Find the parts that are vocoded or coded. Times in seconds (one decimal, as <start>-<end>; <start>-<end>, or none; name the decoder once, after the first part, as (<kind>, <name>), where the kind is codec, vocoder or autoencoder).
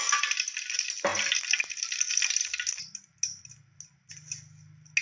none